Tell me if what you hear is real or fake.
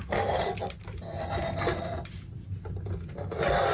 real